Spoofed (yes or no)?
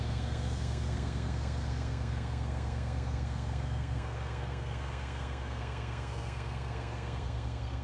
yes